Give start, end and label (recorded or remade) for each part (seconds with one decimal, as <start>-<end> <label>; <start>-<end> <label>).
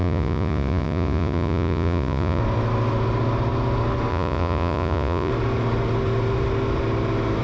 0.0-2.4 remade; 2.4-4.1 recorded; 4.1-5.3 remade; 5.3-7.4 recorded